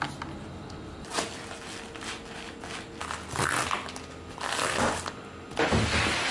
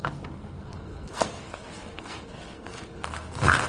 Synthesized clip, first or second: second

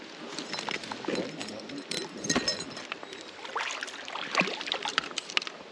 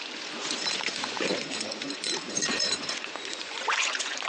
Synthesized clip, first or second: second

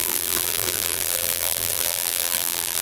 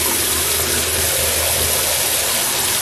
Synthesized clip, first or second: first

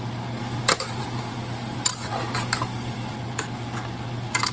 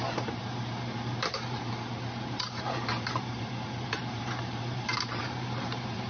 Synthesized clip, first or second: second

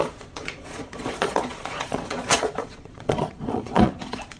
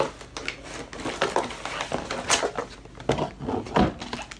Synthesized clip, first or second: first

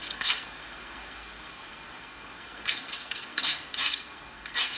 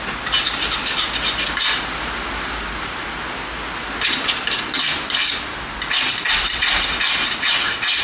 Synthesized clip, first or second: first